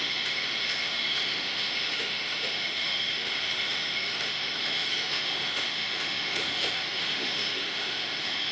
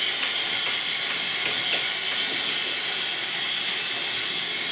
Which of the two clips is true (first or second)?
second